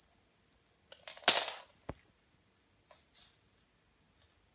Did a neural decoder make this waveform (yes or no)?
no